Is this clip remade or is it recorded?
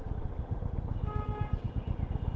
recorded